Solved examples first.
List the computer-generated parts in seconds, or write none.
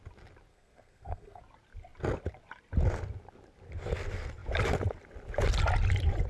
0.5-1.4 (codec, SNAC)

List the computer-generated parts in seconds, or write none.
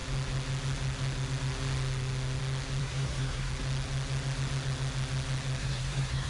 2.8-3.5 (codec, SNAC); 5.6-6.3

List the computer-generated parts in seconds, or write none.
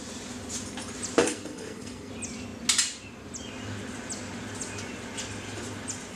1.2-2.1 (codec, SNAC)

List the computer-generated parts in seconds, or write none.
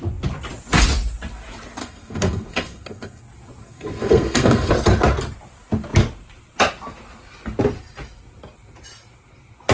1.8-3.2 (codec, SNAC); 3.6-4.7